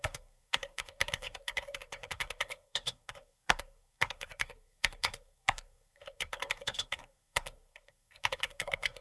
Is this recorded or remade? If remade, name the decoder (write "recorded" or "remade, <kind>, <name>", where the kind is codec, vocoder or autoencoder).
remade, codec, SNAC